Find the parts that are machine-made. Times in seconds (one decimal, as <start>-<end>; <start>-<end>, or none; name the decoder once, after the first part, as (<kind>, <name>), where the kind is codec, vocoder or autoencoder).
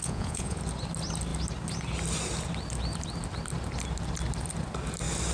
0.0-0.6 (vocoder, Vocos)